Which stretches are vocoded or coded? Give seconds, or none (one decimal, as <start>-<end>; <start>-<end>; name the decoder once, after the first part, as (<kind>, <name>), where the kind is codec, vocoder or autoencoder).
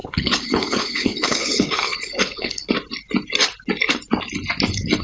0.0-2.7 (codec, HILCodec)